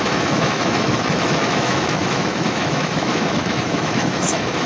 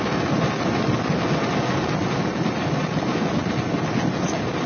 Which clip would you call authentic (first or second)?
second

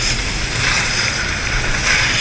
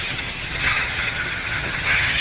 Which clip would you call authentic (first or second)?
first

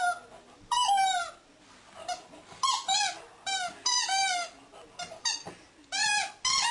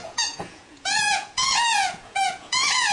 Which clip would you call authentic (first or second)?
first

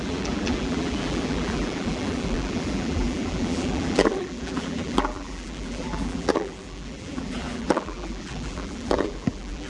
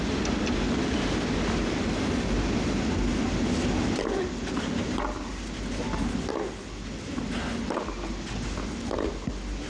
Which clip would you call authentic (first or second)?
second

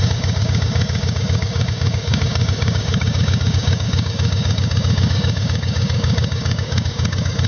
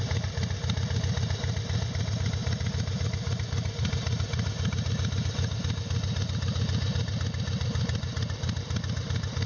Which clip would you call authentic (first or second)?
second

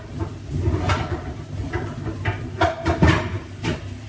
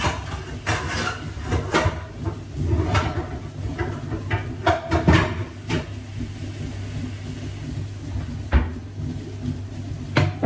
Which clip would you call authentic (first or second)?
second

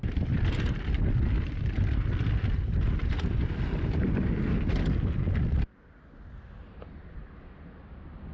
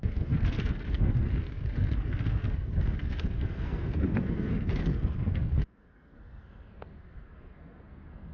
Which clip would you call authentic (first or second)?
first